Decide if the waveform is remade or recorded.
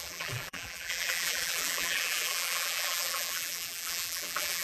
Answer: remade